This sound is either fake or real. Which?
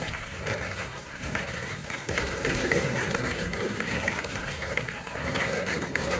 fake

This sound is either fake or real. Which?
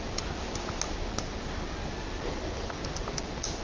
real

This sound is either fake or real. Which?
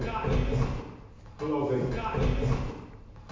real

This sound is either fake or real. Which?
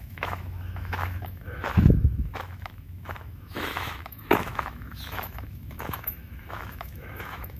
fake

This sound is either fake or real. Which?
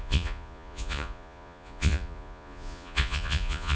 fake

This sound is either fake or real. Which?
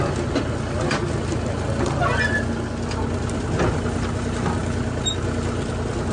real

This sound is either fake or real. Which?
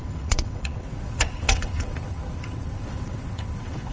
fake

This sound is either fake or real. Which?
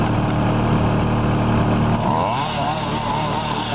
real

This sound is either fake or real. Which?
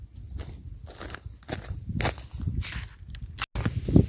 real